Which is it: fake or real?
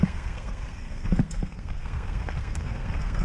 fake